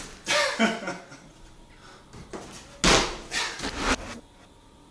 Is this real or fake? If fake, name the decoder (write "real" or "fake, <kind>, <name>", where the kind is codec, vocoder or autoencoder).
real